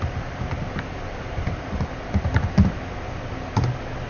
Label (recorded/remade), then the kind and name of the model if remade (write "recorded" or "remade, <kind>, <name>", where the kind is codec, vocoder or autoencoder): recorded